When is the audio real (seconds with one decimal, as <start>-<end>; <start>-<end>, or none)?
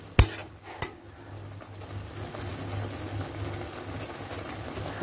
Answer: 0.0-5.0